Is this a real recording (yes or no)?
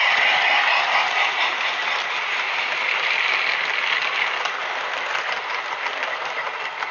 no